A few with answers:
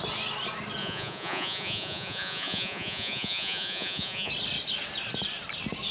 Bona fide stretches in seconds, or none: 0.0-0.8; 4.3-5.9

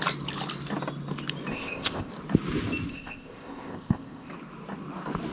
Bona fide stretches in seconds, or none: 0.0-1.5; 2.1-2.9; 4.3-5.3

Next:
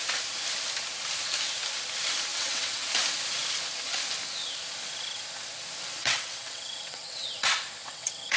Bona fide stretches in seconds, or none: 0.0-2.3; 2.9-6.0; 7.3-7.8

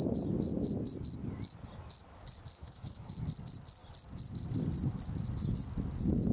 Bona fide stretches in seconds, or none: 0.0-2.6; 3.1-6.3

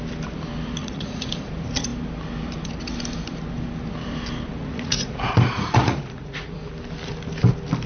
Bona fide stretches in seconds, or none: 0.0-0.8; 1.3-4.6; 6.7-7.9

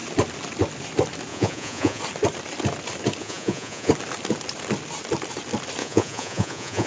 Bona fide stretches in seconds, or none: 0.0-1.3; 2.0-3.2; 3.9-5.8

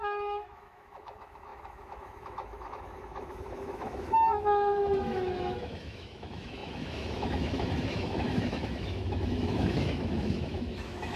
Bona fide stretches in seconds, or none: none

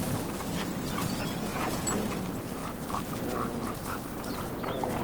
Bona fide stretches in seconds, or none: 0.0-1.5; 2.0-5.0